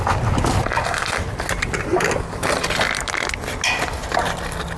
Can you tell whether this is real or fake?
real